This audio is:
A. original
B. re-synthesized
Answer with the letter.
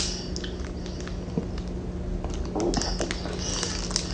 A